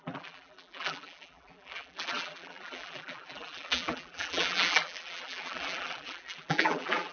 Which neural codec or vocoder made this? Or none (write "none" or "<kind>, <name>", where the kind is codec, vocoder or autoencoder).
vocoder, BigVGAN v2